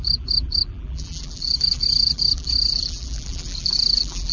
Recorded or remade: remade